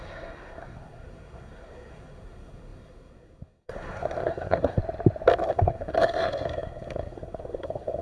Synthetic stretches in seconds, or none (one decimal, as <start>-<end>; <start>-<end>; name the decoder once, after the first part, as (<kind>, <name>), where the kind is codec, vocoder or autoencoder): 0.0-4.8 (codec, SNAC); 5.5-8.0